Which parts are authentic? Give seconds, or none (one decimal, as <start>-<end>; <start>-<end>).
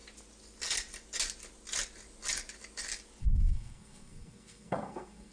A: 0.0-3.2